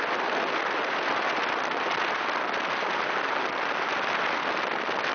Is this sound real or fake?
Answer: real